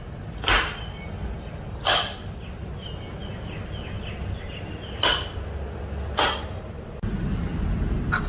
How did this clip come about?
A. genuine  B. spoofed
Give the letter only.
A